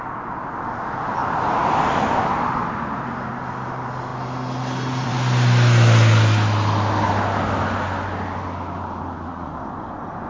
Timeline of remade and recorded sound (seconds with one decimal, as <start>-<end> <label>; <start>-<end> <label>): 0.0-9.3 recorded; 9.3-10.3 remade